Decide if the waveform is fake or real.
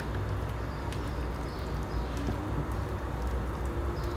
real